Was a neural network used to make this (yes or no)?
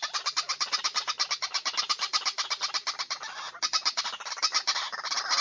no